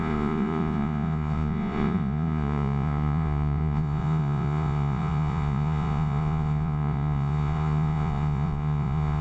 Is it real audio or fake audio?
fake